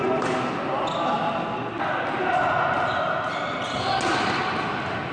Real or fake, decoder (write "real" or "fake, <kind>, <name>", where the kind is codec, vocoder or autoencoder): real